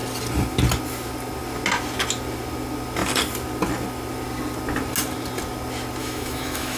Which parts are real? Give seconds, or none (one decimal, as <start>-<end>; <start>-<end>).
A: 0.0-6.0